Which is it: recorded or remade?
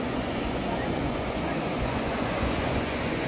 remade